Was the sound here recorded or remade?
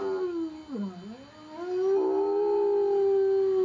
recorded